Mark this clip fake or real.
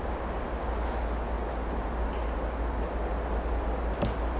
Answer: real